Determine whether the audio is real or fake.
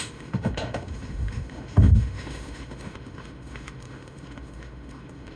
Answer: fake